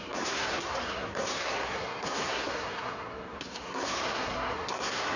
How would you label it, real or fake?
fake